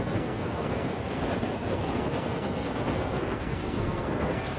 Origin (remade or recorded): remade